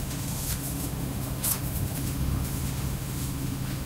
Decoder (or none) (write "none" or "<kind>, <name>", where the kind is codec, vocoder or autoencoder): autoencoder, DAC-VAE